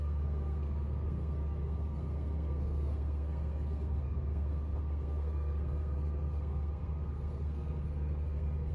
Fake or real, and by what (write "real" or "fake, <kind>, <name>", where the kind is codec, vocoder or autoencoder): fake, codec, SNAC